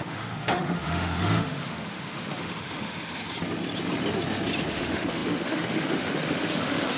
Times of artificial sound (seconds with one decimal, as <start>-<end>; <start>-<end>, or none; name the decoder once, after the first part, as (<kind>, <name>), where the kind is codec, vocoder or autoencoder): 0.0-3.2 (autoencoder, DAC-VAE); 4.7-7.0

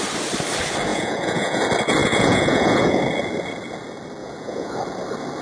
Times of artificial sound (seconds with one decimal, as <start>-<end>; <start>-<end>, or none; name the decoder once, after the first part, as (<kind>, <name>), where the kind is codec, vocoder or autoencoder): 0.9-1.6 (vocoder, Vocos); 2.0-3.0; 4.2-4.7

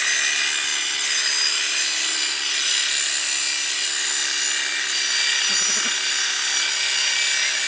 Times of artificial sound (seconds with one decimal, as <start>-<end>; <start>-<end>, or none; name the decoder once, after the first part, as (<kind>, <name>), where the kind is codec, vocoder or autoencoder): none

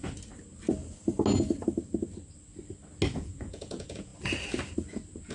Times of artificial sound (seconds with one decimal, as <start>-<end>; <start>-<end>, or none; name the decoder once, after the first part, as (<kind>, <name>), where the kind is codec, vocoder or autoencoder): 3.1-4.1 (vocoder, Vocos)

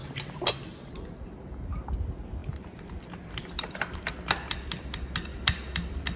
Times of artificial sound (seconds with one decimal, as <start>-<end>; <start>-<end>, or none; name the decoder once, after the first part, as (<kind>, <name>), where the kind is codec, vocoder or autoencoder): 0.0-0.6 (vocoder, BigVGAN v2); 2.4-4.1; 5.3-6.2

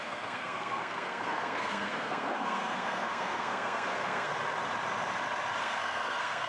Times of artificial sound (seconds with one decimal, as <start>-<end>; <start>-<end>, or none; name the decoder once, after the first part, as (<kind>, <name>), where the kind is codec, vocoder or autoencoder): 0.0-4.3 (codec, SNAC); 5.6-6.5